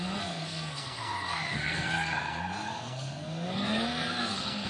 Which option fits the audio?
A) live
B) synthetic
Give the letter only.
B